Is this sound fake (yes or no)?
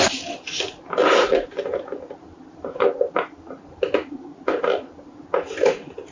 no